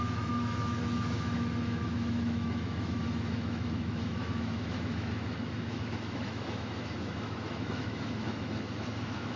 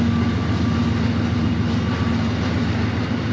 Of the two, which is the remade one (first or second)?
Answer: first